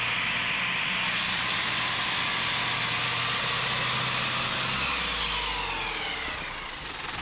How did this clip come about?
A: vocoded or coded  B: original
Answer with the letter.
B